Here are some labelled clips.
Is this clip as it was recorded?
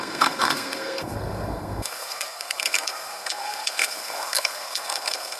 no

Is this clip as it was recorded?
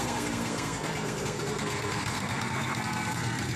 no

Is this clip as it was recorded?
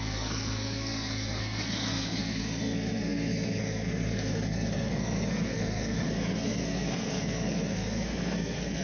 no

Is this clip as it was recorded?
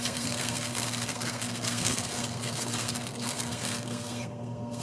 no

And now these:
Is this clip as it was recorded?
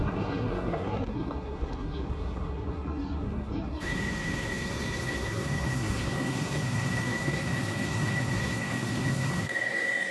no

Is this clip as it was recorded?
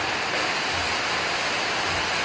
yes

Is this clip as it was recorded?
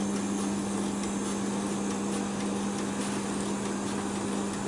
yes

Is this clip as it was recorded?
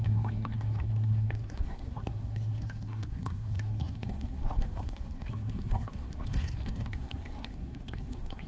no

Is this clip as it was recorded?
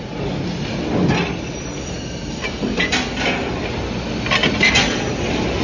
yes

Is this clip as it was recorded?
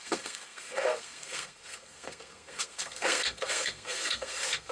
no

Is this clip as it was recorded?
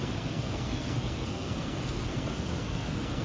no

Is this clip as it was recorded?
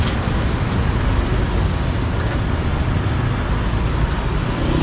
yes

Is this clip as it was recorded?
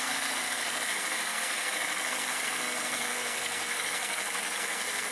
no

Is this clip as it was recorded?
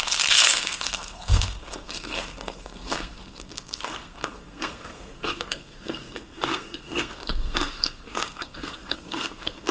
no